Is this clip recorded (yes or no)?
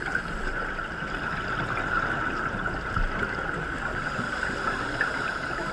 yes